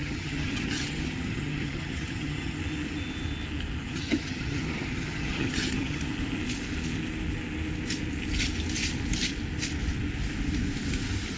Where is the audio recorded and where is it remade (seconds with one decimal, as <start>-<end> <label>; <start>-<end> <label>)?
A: 0.0-2.6 remade; 2.6-3.8 recorded; 3.8-6.0 remade; 6.0-11.4 recorded

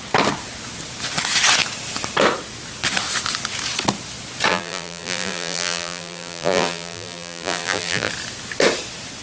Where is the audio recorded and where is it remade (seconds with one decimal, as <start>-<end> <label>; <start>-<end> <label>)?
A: 0.0-4.5 recorded; 4.5-8.1 remade; 8.1-9.2 recorded

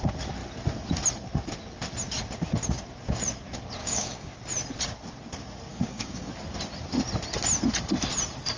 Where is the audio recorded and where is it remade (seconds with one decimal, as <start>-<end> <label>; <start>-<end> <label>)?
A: 0.0-3.8 recorded; 3.8-4.3 remade; 4.3-5.7 recorded; 5.7-6.3 remade; 6.3-8.6 recorded